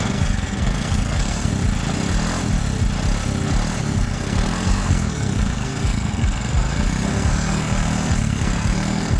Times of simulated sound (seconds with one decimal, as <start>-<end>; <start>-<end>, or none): 0.0-1.5; 3.8-9.2